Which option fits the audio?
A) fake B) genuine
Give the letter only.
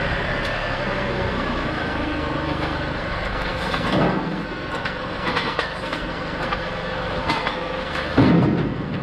A